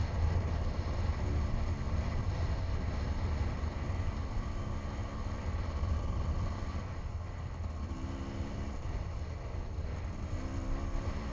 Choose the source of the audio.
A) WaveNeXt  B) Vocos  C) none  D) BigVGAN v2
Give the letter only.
C